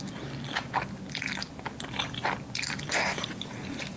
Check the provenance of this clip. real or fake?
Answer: real